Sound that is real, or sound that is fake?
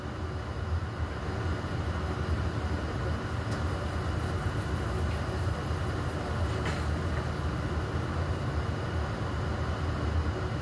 real